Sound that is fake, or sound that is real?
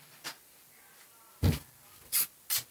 real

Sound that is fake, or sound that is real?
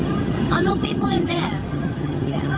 fake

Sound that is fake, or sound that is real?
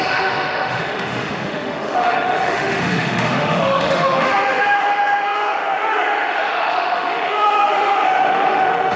fake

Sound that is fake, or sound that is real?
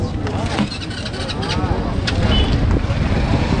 real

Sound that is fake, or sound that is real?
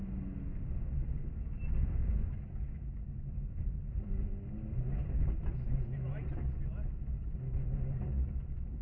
real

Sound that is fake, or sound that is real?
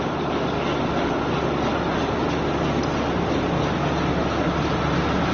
real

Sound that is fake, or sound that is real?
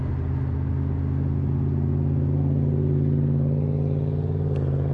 real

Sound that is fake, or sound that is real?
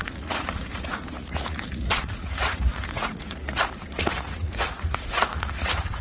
fake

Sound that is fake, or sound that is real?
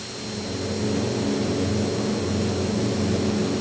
real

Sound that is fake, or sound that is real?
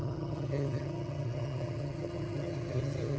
fake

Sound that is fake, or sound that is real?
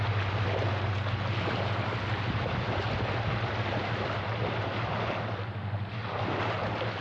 real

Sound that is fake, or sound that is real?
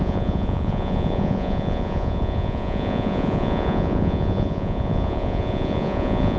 fake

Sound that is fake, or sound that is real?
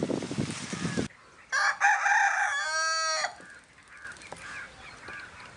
real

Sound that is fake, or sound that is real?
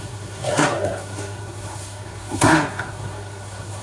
fake